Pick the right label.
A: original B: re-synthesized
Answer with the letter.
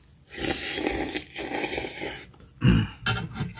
A